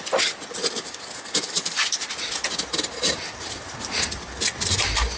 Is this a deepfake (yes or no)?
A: no